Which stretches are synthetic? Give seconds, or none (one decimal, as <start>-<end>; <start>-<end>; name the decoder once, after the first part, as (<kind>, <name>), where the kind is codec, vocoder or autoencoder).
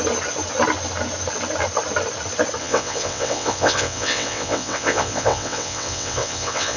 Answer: 2.6-6.8 (vocoder, WaveNeXt)